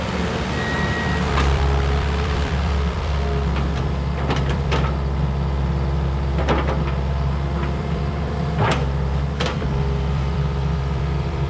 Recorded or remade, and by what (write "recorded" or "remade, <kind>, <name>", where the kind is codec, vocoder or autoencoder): remade, vocoder, BigVGAN v2